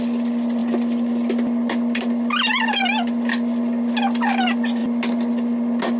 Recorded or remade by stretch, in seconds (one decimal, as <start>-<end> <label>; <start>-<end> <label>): 0.0-6.0 recorded

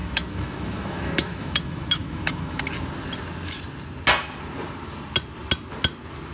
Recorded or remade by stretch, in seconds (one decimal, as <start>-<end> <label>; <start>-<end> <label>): 0.0-2.6 remade; 2.6-6.3 recorded

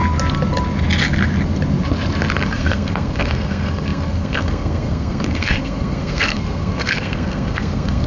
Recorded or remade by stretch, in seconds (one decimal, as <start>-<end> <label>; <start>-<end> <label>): 0.0-2.5 recorded; 2.5-8.1 remade

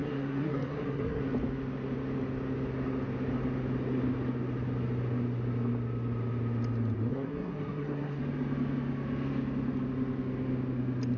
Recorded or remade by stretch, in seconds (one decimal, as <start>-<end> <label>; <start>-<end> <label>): 0.0-1.2 remade; 1.2-7.1 recorded; 7.1-8.2 remade; 8.2-11.2 recorded

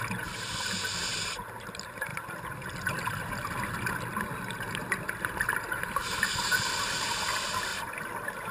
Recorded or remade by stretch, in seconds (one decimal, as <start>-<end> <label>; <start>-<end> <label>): 0.0-2.1 recorded; 2.1-3.2 remade; 3.2-6.0 recorded; 6.0-6.5 remade; 6.5-7.7 recorded; 7.7-8.5 remade

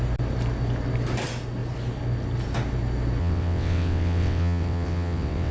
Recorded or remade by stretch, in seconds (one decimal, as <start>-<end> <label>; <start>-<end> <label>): 0.0-3.2 recorded; 3.2-5.5 remade

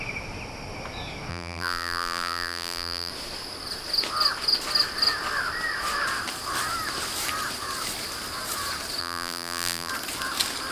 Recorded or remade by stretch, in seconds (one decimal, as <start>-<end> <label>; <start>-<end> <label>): 0.0-1.3 recorded; 1.3-3.1 remade; 3.1-9.0 recorded; 9.0-9.9 remade; 9.9-10.7 recorded